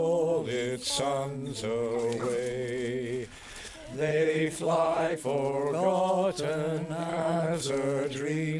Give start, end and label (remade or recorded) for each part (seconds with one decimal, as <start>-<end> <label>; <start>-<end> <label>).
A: 0.0-4.1 recorded; 4.1-5.2 remade; 5.2-7.1 recorded; 7.1-7.7 remade; 7.7-8.6 recorded